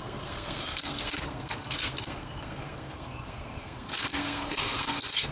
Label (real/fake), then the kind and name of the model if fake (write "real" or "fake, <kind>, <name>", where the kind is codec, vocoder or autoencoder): fake, codec, SNAC